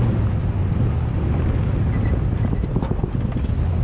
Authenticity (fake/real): real